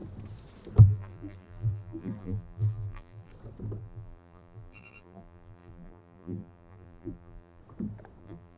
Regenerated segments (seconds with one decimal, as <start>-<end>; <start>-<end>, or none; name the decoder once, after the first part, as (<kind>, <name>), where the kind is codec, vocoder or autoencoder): 0.8-3.3 (vocoder, BigVGAN v2); 3.8-7.6; 8.2-8.6